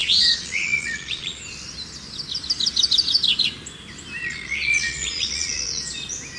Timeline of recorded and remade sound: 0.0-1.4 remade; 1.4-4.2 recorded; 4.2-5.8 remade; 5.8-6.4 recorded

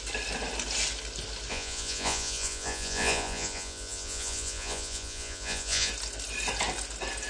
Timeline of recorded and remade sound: 0.0-1.5 recorded; 1.5-5.9 remade; 5.9-7.3 recorded

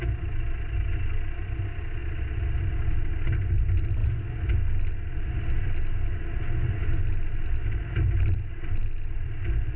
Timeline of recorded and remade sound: 0.0-9.8 recorded

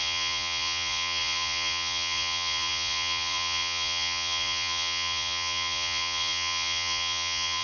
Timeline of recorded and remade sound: 0.0-7.6 remade

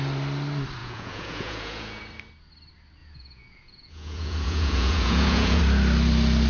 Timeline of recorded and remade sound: 0.0-0.8 recorded; 0.8-2.0 remade; 2.0-3.0 recorded; 3.0-5.6 remade; 5.6-6.5 recorded

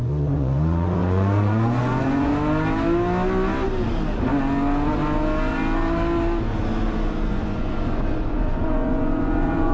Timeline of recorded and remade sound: 0.0-2.3 remade; 2.3-7.3 recorded; 7.3-9.7 remade

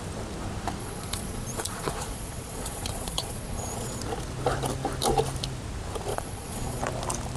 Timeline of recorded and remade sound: 0.0-0.8 recorded; 0.8-4.0 remade; 4.0-6.1 recorded; 6.1-6.8 remade; 6.8-7.4 recorded